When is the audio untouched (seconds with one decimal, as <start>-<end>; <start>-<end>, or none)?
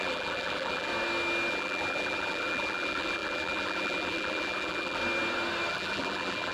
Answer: 0.9-1.5; 5.0-5.7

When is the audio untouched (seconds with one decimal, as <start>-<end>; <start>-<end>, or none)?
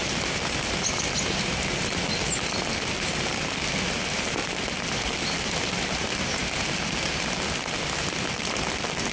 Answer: 0.0-9.1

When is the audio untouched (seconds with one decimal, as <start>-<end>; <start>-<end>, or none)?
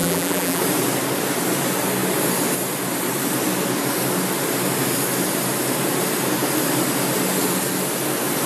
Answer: 0.6-8.5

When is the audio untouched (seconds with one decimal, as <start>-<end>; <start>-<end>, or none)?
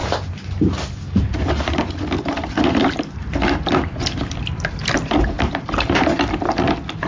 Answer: 4.3-4.8; 6.4-7.1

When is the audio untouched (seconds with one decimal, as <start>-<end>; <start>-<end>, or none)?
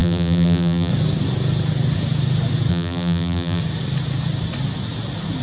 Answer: 0.9-2.7; 3.6-5.4